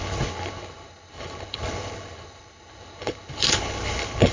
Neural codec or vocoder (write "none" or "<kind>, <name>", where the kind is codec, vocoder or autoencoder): codec, HILCodec